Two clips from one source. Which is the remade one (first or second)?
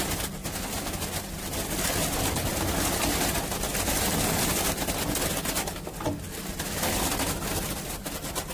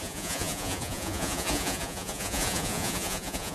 second